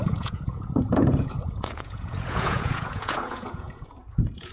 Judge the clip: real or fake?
fake